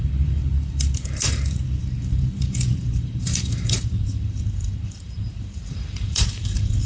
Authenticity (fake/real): fake